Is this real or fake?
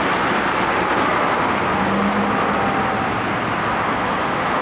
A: real